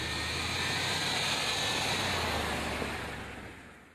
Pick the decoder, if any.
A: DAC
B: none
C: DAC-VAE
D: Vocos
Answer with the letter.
B